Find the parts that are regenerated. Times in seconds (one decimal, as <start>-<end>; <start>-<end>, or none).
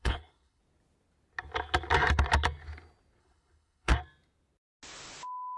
0.0-0.6; 3.2-3.9